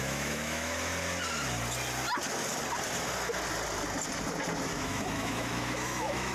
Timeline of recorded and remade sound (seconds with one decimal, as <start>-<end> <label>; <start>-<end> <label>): 0.0-0.9 remade; 0.9-4.7 recorded; 4.7-6.3 remade